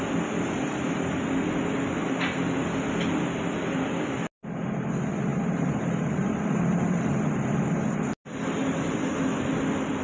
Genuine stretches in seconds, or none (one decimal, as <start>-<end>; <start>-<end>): 0.0-5.3; 7.6-8.6; 9.1-10.0